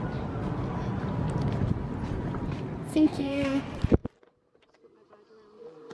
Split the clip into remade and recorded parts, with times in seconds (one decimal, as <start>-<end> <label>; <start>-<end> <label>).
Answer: 0.0-2.9 recorded; 2.9-3.6 remade; 3.6-5.9 recorded